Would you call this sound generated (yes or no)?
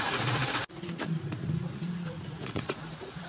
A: yes